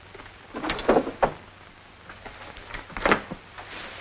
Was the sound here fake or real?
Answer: real